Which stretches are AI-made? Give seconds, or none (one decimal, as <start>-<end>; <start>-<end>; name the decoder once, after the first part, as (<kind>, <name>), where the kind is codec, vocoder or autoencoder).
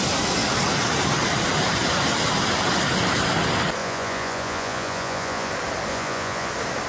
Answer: 3.8-5.5 (vocoder, Vocos); 5.9-6.5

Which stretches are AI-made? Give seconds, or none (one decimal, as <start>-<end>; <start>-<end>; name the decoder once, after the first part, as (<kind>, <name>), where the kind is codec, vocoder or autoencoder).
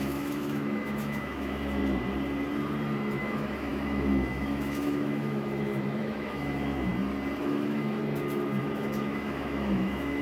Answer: 0.0-1.8 (autoencoder, DAC-VAE); 3.2-6.9; 7.4-8.0; 8.6-10.2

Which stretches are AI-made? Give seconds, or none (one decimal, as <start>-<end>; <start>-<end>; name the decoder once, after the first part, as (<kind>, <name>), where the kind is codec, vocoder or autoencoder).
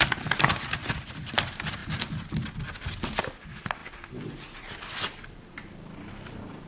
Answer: none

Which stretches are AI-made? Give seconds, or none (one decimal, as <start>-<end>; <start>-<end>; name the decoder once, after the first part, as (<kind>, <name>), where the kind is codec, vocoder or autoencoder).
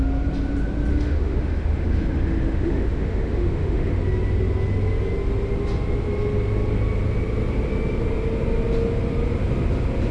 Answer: 0.9-4.0 (autoencoder, DAC-VAE)